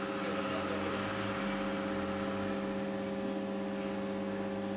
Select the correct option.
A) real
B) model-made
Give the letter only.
A